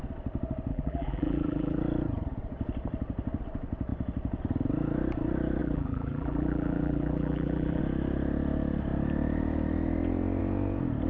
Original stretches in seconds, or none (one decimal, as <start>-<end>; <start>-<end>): 0.0-0.7; 1.8-5.6; 7.8-11.1